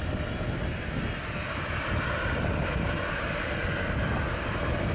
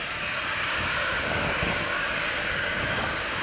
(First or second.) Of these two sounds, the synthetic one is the second